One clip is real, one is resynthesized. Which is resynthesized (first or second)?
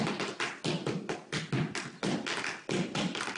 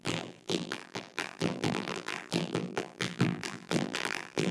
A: second